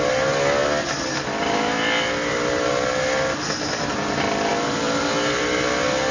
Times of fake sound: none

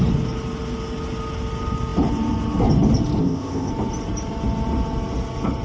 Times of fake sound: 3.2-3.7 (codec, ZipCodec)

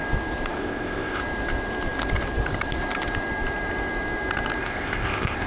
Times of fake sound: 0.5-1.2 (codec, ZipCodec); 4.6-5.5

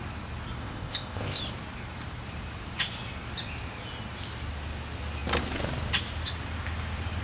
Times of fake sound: 0.6-1.4 (codec, ZipCodec)

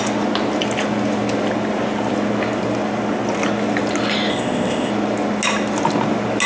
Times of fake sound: 4.3-4.9 (codec, ZipCodec)